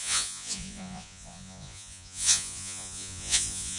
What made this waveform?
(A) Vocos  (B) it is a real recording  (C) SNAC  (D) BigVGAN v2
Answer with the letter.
A